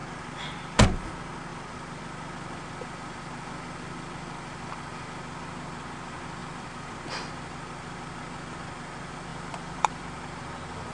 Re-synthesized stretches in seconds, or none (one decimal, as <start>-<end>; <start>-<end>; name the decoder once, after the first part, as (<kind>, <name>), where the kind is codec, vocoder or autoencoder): 1.5-2.0 (vocoder, BigVGAN v2); 6.4-7.3; 9.3-10.0